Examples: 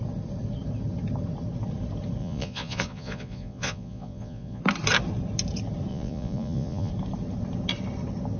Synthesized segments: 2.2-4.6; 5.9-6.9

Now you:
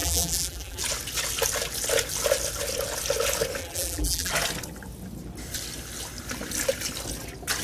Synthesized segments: 0.0-0.8; 3.6-4.3